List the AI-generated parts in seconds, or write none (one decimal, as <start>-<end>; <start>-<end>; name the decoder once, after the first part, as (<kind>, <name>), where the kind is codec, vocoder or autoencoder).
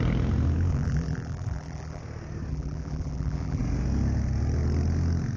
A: 0.7-2.0 (vocoder, BigVGAN v2); 2.5-3.6